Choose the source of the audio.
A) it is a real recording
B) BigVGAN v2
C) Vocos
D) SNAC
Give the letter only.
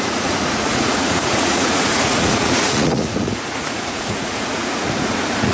C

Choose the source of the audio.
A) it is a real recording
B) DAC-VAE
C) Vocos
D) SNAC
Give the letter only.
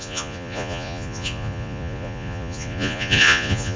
C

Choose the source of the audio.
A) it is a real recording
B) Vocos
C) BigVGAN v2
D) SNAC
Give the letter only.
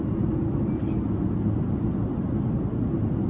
A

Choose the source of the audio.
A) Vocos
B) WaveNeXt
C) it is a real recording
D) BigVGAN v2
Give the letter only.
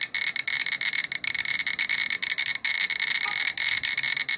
C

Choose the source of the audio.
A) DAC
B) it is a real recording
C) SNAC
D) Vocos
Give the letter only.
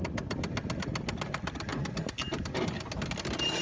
B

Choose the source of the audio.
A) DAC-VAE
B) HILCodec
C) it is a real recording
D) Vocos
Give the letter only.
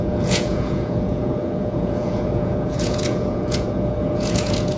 D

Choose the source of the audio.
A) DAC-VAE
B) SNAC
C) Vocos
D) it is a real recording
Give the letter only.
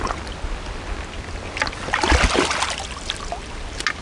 D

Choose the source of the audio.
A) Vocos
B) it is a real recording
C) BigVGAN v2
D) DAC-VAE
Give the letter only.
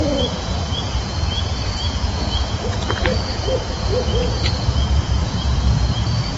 A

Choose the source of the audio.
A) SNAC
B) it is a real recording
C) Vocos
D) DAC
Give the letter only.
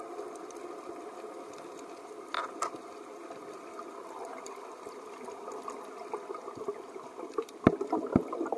B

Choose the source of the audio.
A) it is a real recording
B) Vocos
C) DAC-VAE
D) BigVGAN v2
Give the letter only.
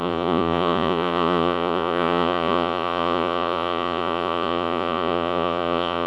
B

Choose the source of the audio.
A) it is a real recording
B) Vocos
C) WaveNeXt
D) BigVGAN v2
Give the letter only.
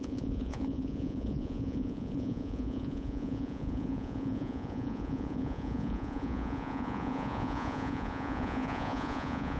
B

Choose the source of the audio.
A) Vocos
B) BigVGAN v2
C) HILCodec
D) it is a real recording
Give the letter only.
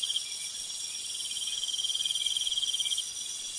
A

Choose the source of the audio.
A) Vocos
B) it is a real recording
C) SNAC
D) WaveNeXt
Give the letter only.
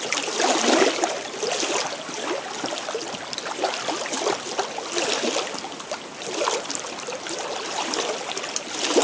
B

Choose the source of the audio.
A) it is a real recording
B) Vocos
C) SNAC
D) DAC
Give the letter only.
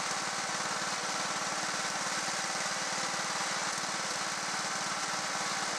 A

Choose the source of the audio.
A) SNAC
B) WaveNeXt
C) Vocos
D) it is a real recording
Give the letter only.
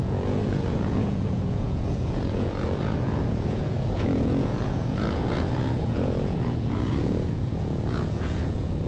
C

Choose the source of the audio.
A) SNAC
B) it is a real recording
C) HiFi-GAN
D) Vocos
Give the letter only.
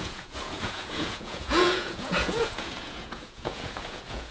D